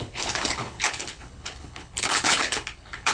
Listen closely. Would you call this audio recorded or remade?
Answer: remade